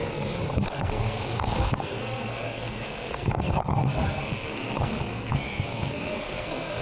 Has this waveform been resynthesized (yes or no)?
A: yes